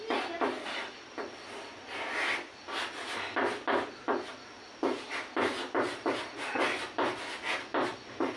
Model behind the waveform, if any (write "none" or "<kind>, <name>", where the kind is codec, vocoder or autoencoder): none